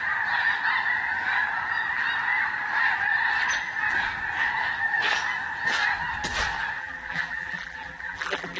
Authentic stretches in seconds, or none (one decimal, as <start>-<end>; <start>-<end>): 0.0-6.8